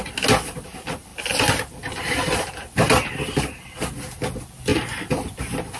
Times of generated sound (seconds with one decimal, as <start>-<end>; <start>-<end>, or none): 4.7-5.8